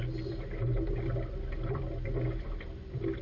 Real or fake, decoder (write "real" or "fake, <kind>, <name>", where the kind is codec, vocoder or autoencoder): real